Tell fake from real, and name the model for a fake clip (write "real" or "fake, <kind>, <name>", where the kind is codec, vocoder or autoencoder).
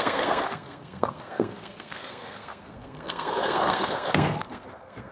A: fake, codec, SNAC